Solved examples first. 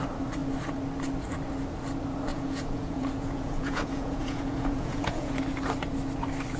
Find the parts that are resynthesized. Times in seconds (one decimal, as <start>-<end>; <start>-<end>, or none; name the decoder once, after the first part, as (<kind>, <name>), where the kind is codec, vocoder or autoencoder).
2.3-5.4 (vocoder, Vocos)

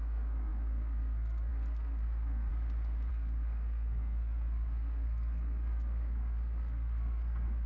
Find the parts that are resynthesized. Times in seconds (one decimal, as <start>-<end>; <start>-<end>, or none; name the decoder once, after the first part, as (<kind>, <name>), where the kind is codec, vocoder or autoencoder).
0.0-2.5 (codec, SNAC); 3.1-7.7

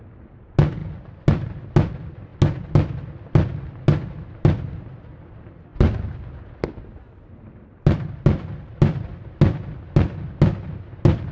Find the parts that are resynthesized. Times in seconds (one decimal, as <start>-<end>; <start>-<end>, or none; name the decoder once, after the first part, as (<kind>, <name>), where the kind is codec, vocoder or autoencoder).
none

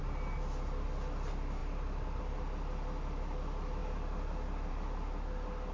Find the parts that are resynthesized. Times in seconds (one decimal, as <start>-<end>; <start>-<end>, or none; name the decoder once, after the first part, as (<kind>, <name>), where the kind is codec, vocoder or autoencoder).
none